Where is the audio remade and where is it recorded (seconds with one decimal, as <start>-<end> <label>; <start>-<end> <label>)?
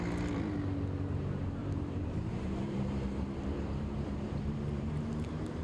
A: 0.0-1.6 recorded; 1.6-5.0 remade; 5.0-5.6 recorded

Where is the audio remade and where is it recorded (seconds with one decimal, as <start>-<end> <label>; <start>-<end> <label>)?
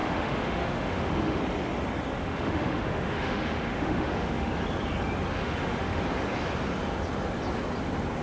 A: 0.0-1.4 remade; 1.4-2.2 recorded; 2.2-4.5 remade; 4.5-5.4 recorded; 5.4-6.0 remade; 6.0-8.2 recorded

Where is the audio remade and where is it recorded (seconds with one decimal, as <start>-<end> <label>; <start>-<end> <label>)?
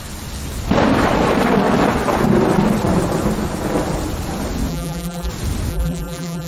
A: 0.0-4.7 recorded; 4.7-5.3 remade; 5.3-5.7 recorded; 5.7-6.5 remade